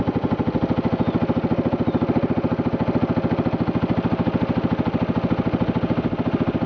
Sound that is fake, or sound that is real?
real